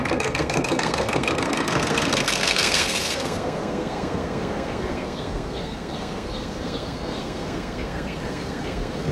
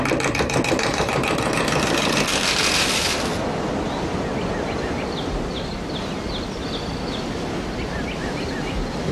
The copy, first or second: first